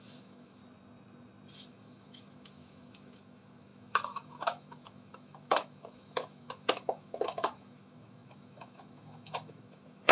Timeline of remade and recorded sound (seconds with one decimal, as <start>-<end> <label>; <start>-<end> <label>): 0.0-0.6 remade; 0.6-1.7 recorded; 1.7-10.1 remade